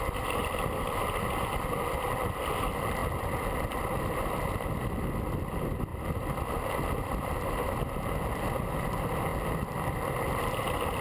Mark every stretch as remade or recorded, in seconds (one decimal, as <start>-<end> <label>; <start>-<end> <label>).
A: 0.0-11.0 recorded